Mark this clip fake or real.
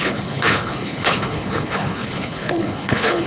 fake